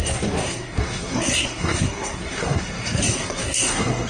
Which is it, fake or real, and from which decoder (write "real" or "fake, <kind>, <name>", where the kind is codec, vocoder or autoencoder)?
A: fake, codec, SNAC